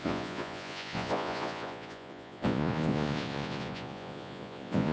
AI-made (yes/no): yes